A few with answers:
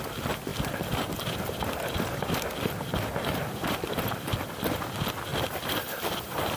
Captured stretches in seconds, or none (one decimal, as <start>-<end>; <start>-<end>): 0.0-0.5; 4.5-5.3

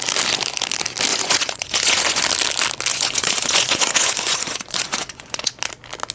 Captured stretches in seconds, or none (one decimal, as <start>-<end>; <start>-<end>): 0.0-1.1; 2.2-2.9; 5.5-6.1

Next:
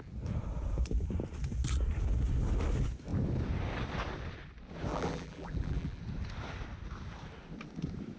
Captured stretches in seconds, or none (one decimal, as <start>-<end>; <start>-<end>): 0.0-4.9; 6.0-8.2

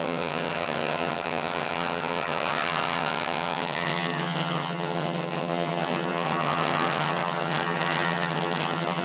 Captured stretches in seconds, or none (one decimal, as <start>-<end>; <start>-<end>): none